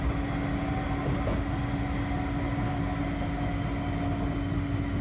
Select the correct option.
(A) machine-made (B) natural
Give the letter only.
B